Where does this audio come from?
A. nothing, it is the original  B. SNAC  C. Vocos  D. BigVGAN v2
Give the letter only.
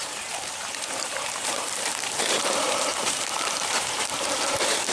D